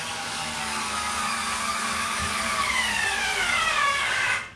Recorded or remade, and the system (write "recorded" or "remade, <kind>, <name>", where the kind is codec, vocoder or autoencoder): remade, codec, DAC